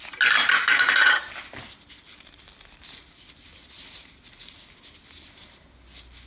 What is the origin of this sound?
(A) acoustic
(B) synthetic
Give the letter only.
A